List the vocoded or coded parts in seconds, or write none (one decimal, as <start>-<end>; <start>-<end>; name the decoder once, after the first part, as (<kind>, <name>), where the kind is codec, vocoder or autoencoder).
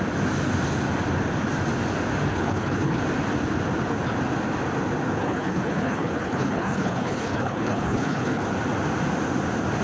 2.3-3.0 (codec, HILCodec); 5.2-8.4